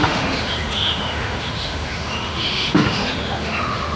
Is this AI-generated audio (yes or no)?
yes